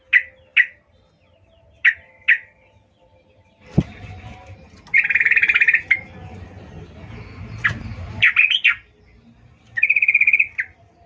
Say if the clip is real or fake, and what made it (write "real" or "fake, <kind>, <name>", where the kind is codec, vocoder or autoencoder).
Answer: real